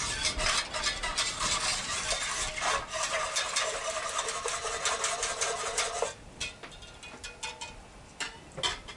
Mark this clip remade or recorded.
recorded